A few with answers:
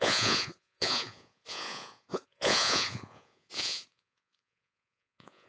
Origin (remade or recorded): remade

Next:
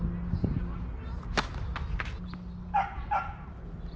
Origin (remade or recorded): recorded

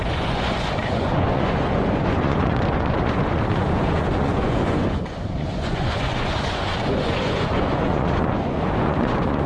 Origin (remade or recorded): remade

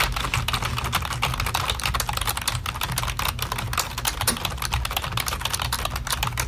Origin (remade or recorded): recorded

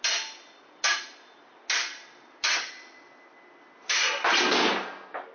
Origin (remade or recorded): recorded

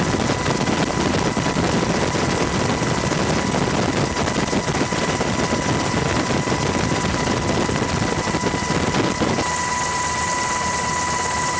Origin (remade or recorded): recorded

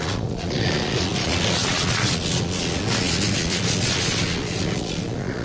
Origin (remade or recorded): remade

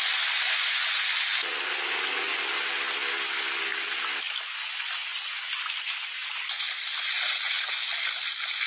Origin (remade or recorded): recorded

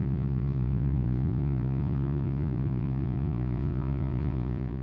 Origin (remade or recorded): remade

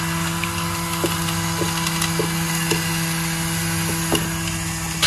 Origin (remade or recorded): recorded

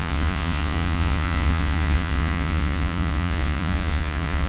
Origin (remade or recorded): remade